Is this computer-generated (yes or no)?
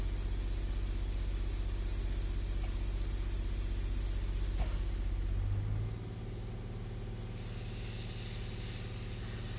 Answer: no